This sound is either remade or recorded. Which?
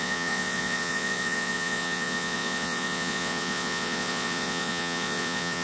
remade